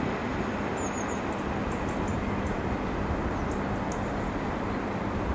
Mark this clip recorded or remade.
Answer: recorded